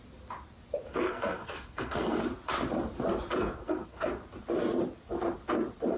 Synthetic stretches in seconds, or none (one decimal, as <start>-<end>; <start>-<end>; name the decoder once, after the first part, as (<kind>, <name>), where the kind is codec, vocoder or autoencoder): 0.9-2.3 (codec, SNAC); 3.4-4.1